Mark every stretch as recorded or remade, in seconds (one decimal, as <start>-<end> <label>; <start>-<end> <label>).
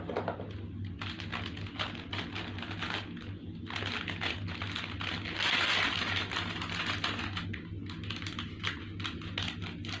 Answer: 0.0-10.0 recorded